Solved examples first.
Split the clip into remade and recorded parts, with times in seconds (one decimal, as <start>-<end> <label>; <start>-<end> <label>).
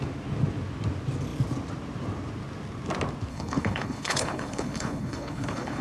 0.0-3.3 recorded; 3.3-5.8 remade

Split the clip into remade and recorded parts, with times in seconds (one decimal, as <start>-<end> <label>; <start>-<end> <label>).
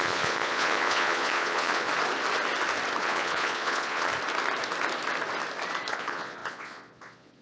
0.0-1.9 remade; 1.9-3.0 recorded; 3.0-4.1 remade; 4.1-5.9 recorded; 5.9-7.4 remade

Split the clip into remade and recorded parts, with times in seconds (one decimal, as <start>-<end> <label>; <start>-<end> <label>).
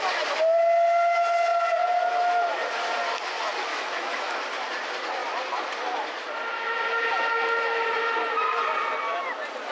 0.0-3.7 recorded; 3.7-4.4 remade; 4.4-9.7 recorded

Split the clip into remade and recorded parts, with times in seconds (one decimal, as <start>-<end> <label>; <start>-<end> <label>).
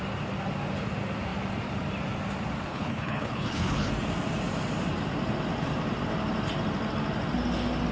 0.0-2.7 recorded; 2.7-3.9 remade; 3.9-7.9 recorded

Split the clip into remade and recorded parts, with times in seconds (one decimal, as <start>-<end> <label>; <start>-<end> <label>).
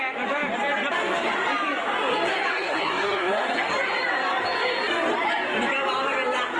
0.0-2.5 recorded; 2.5-3.6 remade; 3.6-6.6 recorded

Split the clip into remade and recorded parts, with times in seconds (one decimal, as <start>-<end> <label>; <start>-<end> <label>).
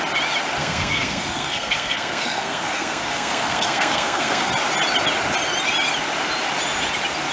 0.0-0.6 recorded; 0.6-4.5 remade; 4.5-7.3 recorded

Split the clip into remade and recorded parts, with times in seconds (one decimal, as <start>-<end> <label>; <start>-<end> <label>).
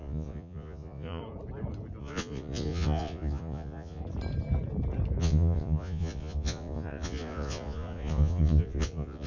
0.0-1.2 remade; 1.2-2.0 recorded; 2.0-4.0 remade; 4.0-5.2 recorded; 5.2-9.3 remade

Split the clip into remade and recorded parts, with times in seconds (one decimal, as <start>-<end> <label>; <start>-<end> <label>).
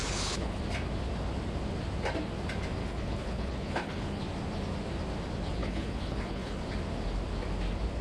0.0-0.6 remade; 0.6-2.8 recorded; 2.8-4.2 remade; 4.2-5.6 recorded; 5.6-6.6 remade; 6.6-8.0 recorded